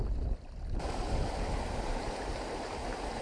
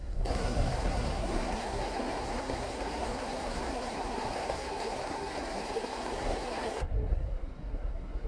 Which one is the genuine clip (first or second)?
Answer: first